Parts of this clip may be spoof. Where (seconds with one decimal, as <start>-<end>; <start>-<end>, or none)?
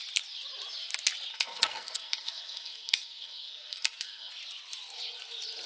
1.3-4.3